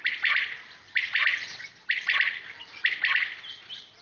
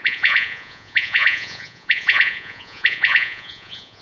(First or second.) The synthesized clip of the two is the second